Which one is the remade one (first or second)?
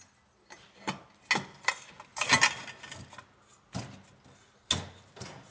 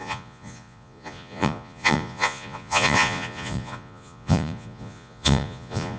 second